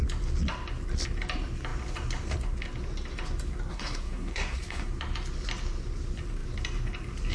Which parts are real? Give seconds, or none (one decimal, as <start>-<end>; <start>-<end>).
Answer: 0.0-3.7; 4.9-7.3